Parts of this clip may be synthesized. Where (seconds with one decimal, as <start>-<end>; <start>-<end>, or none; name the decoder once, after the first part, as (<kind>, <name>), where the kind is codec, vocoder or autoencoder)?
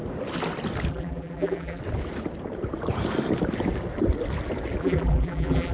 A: 0.9-1.8 (vocoder, BigVGAN v2); 4.8-5.7